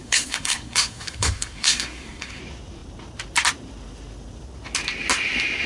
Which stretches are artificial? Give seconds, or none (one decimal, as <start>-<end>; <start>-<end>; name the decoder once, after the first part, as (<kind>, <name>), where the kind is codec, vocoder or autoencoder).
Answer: 0.0-2.4 (codec, SNAC)